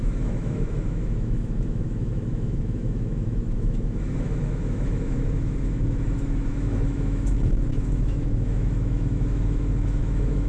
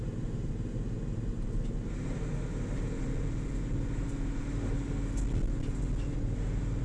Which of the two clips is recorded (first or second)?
second